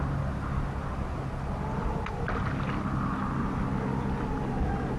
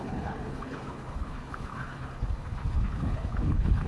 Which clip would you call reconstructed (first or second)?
second